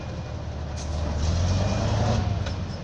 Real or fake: real